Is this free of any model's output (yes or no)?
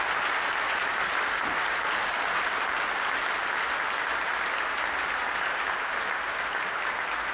yes